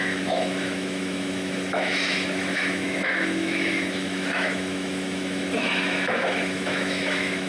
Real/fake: fake